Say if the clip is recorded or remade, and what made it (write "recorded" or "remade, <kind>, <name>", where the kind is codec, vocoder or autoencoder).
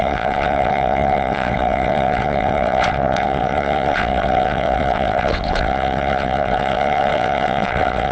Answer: remade, vocoder, WaveNeXt